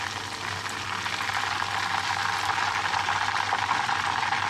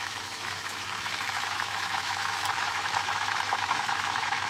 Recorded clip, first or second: first